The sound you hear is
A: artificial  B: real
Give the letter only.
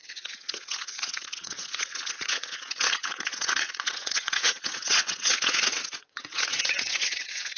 A